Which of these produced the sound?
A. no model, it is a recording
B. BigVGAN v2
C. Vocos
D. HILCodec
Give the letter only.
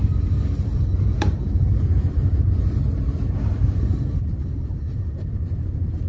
B